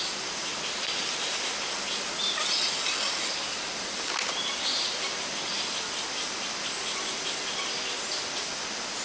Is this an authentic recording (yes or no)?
yes